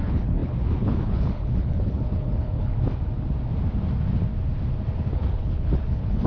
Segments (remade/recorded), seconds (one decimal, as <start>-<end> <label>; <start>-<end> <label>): 0.0-2.7 remade; 2.7-5.0 recorded; 5.0-6.3 remade

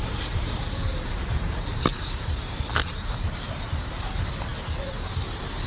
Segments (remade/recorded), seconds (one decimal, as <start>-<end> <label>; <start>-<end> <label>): 0.0-1.2 remade; 1.2-1.9 recorded; 1.9-4.1 remade; 4.1-5.7 recorded

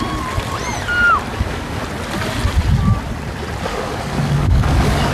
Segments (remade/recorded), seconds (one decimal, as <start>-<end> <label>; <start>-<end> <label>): 0.0-1.3 recorded; 1.3-1.8 remade; 1.8-3.7 recorded; 3.7-5.1 remade

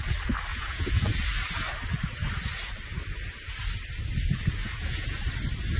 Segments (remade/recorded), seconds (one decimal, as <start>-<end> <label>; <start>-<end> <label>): 0.0-0.5 recorded; 0.5-1.2 remade; 1.2-4.6 recorded; 4.6-5.2 remade; 5.2-5.8 recorded

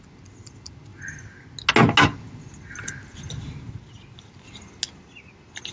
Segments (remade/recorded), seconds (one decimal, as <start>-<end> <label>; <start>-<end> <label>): 0.0-5.7 recorded

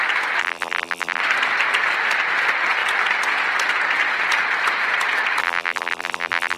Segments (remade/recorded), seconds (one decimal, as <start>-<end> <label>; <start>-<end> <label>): 0.0-0.4 recorded; 0.4-1.2 remade; 1.2-5.4 recorded; 5.4-6.6 remade

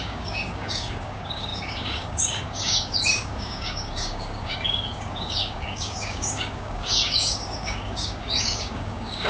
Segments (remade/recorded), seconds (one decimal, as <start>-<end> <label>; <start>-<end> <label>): 0.0-9.3 remade

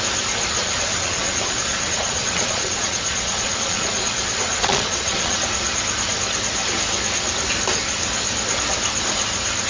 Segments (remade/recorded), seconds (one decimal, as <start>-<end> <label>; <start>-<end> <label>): 0.0-0.6 recorded; 0.6-5.4 remade; 5.4-9.7 recorded